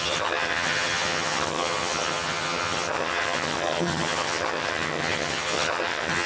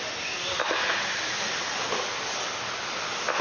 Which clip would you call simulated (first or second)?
first